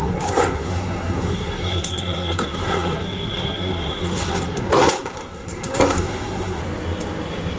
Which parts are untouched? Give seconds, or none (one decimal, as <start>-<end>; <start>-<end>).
6.6-7.6